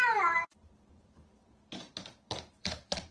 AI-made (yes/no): yes